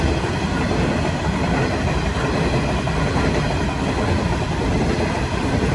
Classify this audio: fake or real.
real